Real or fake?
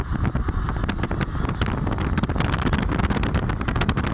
real